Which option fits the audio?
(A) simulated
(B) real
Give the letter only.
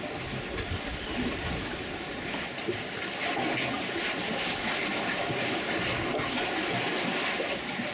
B